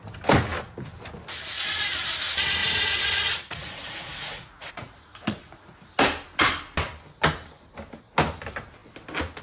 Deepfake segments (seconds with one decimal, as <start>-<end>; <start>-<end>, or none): 2.6-5.9